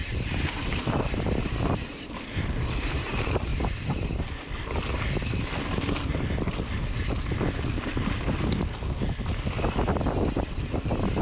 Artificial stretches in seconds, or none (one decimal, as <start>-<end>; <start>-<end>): 0.0-1.6; 3.5-4.2